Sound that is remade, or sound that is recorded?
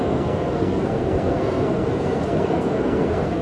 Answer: remade